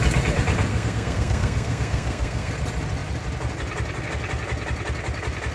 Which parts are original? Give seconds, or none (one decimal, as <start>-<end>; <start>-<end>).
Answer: 0.0-0.7; 2.5-5.5